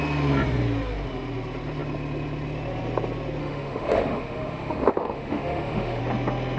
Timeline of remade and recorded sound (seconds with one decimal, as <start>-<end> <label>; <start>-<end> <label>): 0.0-3.4 recorded; 3.4-6.0 remade; 6.0-6.6 recorded